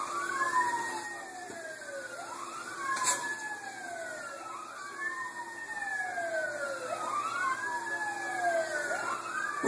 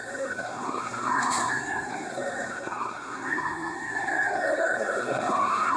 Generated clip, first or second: second